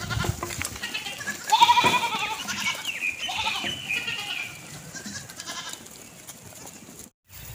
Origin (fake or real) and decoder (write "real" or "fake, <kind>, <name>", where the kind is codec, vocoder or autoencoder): real